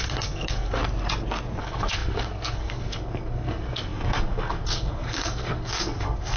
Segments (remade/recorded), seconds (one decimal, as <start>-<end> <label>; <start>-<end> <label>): 0.0-0.8 remade; 0.8-1.6 recorded; 1.6-6.4 remade